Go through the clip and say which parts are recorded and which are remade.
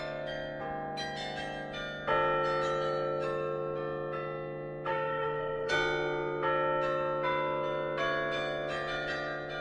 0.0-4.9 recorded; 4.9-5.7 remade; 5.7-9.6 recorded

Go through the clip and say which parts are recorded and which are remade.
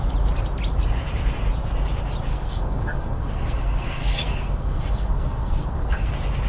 0.0-2.3 recorded; 2.3-6.1 remade; 6.1-6.5 recorded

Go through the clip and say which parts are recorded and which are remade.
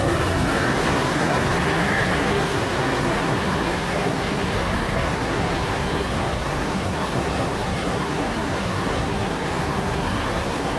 0.0-10.8 remade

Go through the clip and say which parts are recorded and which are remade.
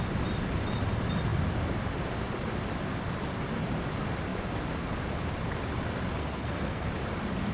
0.0-6.2 recorded; 6.2-6.9 remade; 6.9-7.5 recorded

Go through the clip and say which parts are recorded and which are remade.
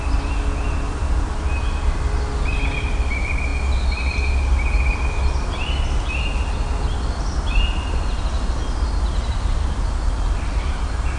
0.0-11.2 recorded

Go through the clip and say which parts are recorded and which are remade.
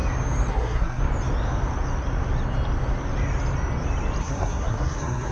0.0-0.5 recorded; 0.5-1.0 remade; 1.0-4.2 recorded; 4.2-5.3 remade